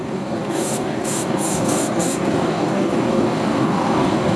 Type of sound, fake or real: fake